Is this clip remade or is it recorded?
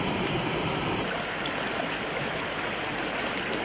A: recorded